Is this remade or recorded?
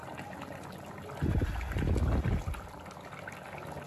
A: recorded